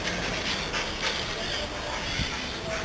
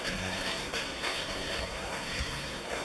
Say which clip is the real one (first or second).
first